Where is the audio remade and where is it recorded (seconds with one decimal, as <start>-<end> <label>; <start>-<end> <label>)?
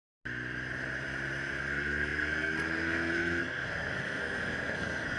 0.0-1.6 recorded; 1.6-5.2 remade